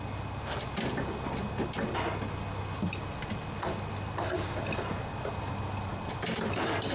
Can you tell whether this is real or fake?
real